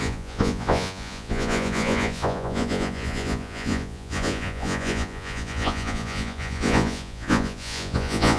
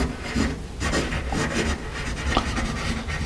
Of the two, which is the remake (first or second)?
first